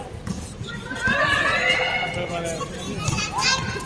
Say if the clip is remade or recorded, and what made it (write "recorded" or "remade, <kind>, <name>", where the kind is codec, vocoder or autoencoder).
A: recorded